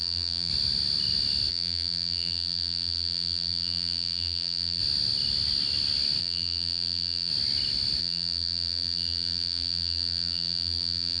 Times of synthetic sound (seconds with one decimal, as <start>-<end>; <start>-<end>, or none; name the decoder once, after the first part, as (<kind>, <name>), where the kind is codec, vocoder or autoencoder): 0.0-0.5 (vocoder, BigVGAN v2); 1.5-4.8; 6.2-7.3; 8.0-11.2